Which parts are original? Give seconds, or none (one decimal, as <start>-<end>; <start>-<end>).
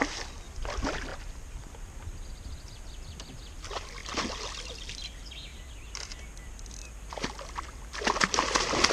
0.0-8.9